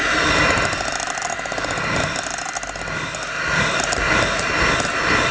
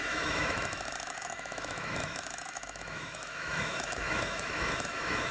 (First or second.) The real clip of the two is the first